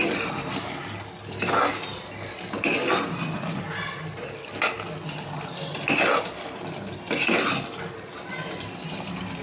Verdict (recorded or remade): recorded